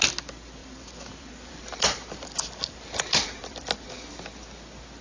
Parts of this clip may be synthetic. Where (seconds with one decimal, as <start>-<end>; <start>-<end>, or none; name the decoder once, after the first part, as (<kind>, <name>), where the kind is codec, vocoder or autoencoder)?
0.6-3.6 (vocoder, BigVGAN v2)